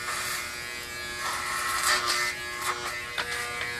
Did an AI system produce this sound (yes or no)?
no